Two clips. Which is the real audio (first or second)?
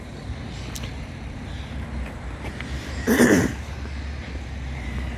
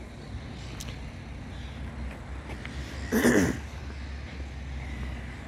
second